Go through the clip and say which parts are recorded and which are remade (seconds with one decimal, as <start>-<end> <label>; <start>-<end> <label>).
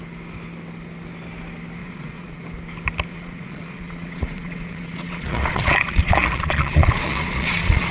0.0-1.8 recorded; 1.8-2.4 remade; 2.4-3.1 recorded; 3.1-7.9 remade